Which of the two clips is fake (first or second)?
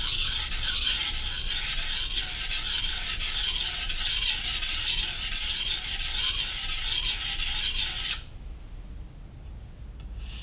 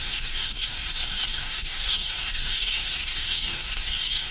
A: second